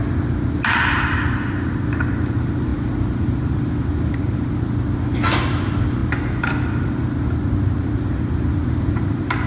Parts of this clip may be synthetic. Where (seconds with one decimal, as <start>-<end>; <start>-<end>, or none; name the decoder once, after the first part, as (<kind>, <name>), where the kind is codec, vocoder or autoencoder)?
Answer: none